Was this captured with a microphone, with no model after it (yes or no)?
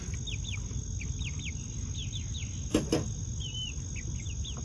yes